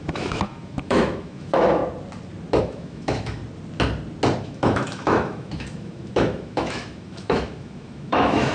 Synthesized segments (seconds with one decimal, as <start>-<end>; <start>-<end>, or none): 0.0-1.8; 2.6-3.4; 4.4-8.5